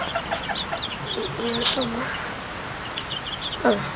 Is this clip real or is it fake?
real